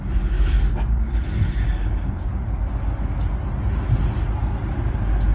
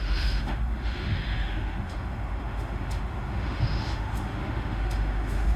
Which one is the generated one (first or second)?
second